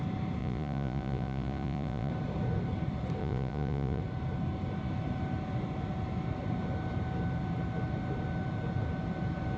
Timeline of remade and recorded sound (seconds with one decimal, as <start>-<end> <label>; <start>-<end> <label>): 0.0-0.4 recorded; 0.4-2.1 remade; 2.1-3.2 recorded; 3.2-4.0 remade; 4.0-9.6 recorded

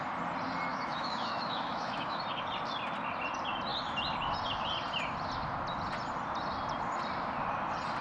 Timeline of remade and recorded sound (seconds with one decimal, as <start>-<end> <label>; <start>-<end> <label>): 0.0-0.7 recorded; 0.7-2.2 remade; 2.2-8.0 recorded

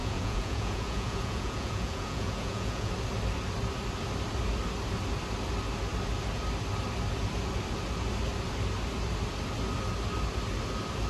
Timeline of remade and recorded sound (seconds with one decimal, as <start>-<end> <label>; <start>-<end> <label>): 0.0-2.9 remade; 2.9-11.1 recorded